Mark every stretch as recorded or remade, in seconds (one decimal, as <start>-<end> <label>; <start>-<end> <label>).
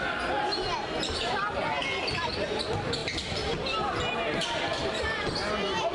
0.0-4.8 recorded; 4.8-5.3 remade; 5.3-5.9 recorded